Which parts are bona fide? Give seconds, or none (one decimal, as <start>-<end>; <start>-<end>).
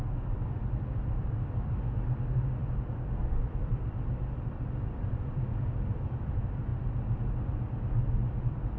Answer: 6.7-8.1